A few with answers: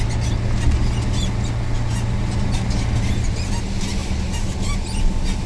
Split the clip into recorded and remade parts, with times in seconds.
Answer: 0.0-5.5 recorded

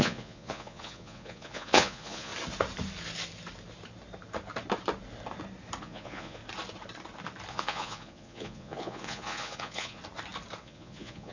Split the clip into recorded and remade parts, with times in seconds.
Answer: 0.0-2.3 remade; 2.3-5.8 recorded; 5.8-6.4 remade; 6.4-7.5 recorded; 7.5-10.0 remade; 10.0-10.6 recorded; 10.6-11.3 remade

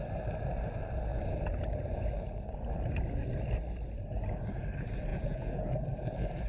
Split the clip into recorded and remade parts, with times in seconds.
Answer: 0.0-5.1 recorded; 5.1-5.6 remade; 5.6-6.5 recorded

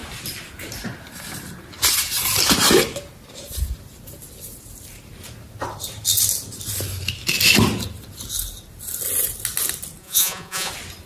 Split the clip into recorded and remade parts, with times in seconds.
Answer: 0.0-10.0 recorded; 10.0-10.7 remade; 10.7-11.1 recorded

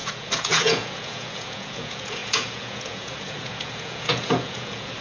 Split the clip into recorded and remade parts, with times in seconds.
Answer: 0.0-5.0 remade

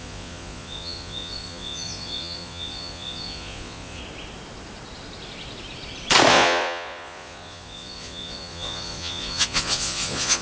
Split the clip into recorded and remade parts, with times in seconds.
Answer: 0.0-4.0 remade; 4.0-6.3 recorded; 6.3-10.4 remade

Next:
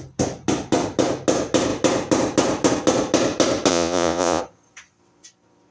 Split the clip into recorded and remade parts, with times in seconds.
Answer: 0.0-3.7 recorded; 3.7-4.4 remade; 4.4-5.7 recorded

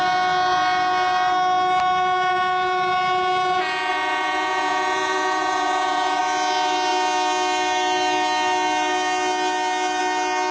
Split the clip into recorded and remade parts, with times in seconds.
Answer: 0.0-3.9 recorded; 3.9-6.2 remade; 6.2-10.5 recorded